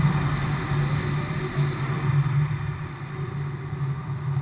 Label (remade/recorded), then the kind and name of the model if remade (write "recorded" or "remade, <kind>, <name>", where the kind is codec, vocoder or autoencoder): recorded